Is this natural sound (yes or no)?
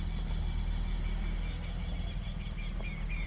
yes